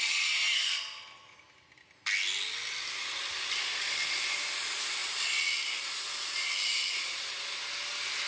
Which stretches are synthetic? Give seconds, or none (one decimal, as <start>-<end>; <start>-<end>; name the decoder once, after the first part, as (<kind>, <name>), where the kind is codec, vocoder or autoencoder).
none